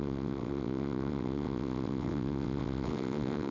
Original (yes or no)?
no